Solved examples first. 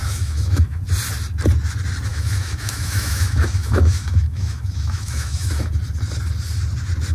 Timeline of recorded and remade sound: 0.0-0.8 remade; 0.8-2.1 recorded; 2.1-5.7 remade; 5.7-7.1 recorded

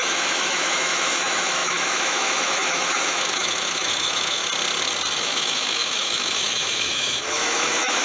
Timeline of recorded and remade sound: 0.0-4.4 remade; 4.4-5.2 recorded; 5.2-8.0 remade